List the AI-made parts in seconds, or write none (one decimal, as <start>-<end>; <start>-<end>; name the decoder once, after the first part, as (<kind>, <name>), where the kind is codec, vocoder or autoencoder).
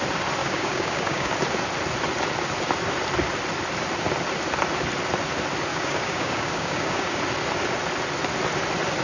0.4-1.3 (codec, DAC); 5.7-7.2